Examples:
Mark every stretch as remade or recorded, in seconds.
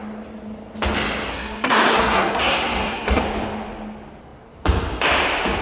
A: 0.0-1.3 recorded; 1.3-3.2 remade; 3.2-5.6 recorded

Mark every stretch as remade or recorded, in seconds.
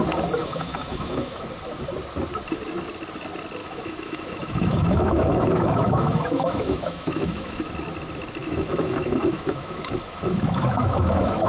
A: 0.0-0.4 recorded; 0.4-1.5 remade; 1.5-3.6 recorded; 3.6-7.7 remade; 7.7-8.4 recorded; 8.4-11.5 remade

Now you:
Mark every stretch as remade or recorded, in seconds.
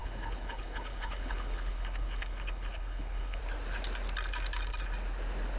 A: 0.0-3.4 remade; 3.4-5.6 recorded